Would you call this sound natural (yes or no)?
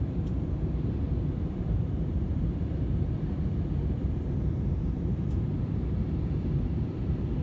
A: no